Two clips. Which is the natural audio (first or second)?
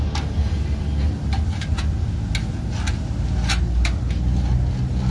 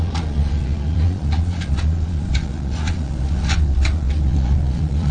first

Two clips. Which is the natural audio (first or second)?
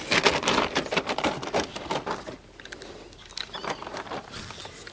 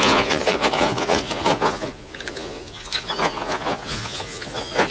first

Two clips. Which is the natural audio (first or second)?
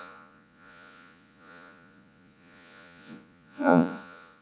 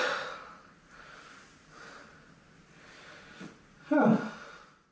second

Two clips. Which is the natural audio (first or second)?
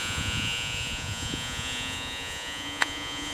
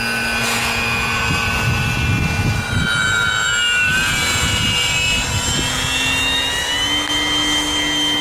second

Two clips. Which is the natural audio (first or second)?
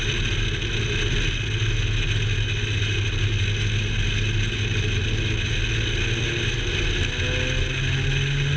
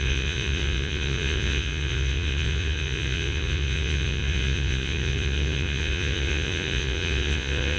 first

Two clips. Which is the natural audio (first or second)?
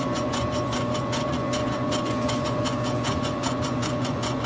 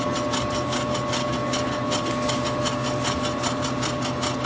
second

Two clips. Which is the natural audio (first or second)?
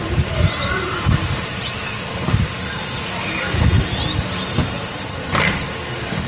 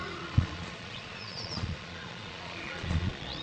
first